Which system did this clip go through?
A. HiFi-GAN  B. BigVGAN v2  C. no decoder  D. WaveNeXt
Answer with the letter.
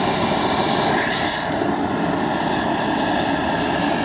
C